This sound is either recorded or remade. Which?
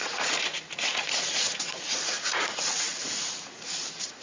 remade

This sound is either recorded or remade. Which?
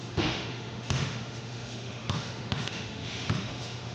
remade